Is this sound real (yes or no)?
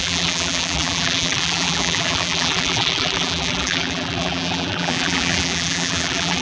no